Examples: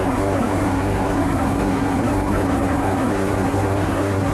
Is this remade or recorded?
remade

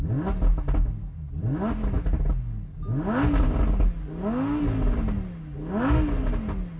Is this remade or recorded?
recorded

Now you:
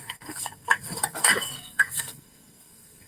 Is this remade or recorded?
remade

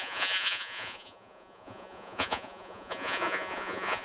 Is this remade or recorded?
remade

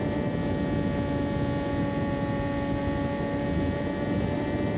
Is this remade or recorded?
recorded